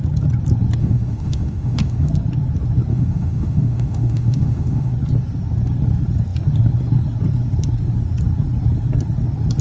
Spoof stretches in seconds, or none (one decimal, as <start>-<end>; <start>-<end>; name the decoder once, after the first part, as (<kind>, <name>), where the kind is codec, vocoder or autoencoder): 0.8-2.1 (autoencoder, DAC-VAE); 2.9-4.9